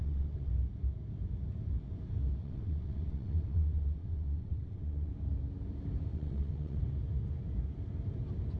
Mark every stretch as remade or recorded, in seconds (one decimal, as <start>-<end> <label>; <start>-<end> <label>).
0.0-0.5 remade; 0.5-2.4 recorded; 2.4-5.1 remade; 5.1-6.1 recorded; 6.1-6.8 remade; 6.8-8.6 recorded